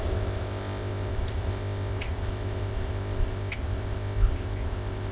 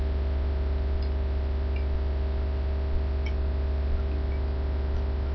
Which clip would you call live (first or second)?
second